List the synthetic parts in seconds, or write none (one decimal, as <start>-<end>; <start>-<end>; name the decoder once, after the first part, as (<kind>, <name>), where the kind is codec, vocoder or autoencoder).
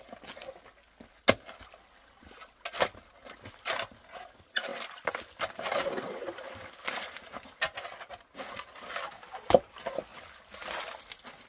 none